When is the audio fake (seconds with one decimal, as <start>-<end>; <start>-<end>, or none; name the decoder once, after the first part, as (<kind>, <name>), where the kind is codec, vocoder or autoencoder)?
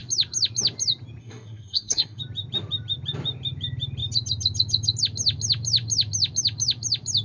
1.2-2.2 (codec, SNAC)